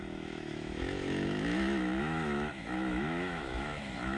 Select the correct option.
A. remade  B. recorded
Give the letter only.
A